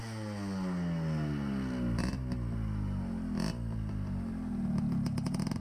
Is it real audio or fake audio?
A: real